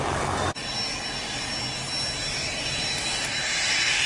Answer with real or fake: real